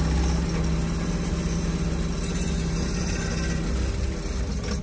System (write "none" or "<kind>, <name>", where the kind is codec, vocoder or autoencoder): none